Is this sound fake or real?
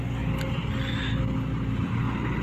real